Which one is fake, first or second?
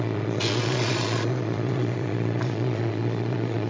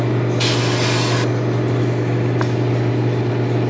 first